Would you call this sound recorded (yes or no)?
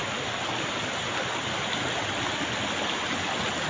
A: yes